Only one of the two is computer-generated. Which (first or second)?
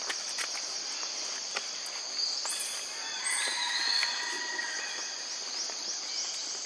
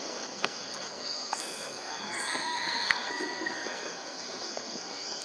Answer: second